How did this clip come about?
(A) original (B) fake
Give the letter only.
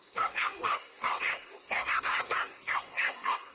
B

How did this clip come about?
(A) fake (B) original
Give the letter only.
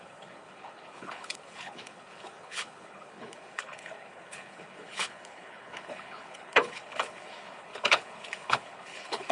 A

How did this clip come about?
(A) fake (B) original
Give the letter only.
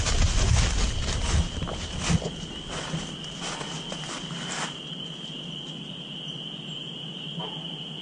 B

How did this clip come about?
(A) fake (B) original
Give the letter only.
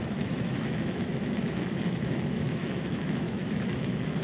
A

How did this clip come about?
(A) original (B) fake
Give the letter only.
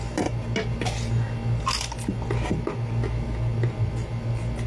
A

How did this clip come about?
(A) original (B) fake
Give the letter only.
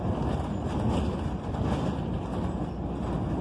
A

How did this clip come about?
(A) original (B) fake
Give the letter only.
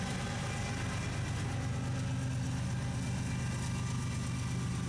A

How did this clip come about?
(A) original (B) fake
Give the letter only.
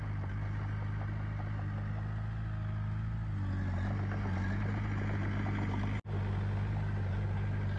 A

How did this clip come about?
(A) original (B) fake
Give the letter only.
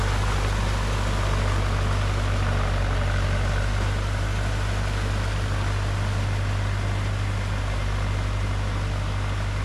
A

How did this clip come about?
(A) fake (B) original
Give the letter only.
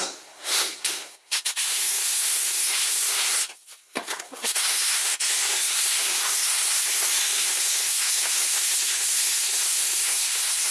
A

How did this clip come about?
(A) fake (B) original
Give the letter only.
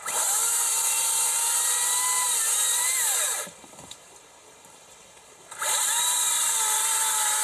B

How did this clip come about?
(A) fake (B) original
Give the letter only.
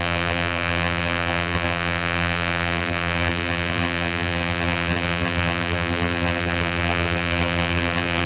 A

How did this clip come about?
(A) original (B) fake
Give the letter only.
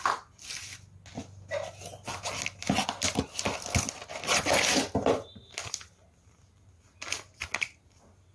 A